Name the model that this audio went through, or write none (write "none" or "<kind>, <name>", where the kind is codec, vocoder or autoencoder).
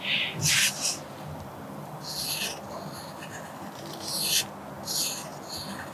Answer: none